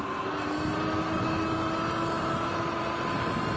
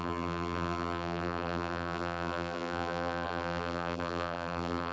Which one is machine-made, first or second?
second